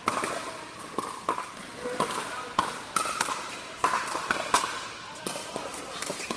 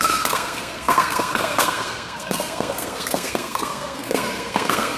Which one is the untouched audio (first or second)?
first